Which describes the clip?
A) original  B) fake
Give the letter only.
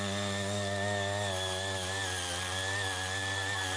A